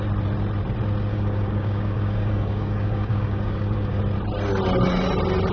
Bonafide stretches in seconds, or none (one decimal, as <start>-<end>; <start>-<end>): 0.0-1.1; 4.0-5.5